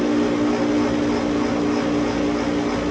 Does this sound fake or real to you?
real